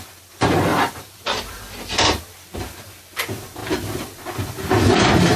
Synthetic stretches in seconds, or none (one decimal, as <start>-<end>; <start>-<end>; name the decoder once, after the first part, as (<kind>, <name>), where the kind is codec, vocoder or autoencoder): 0.7-2.2 (vocoder, BigVGAN v2)